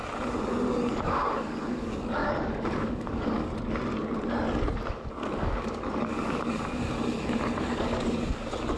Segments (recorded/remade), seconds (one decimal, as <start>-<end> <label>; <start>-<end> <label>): 0.0-0.9 recorded; 0.9-3.5 remade; 3.5-4.9 recorded; 4.9-6.8 remade; 6.8-7.6 recorded; 7.6-8.8 remade